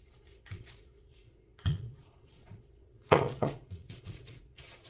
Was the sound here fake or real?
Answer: fake